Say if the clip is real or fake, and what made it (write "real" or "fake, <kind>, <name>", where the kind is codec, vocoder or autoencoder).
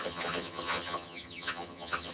fake, vocoder, HiFi-GAN